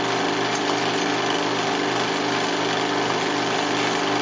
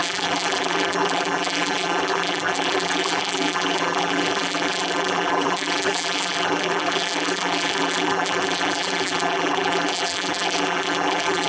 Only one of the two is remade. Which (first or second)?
second